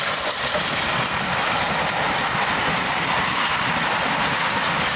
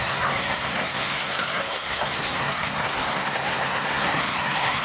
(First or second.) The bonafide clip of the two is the first